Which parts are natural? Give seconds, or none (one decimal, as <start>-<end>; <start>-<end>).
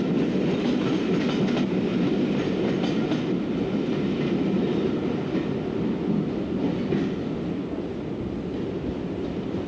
0.0-9.7